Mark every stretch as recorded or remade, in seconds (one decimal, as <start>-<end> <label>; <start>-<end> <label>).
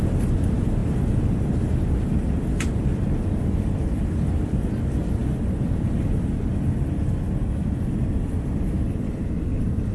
0.0-9.9 recorded